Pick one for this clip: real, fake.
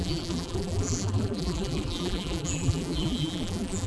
fake